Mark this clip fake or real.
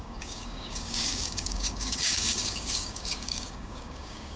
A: fake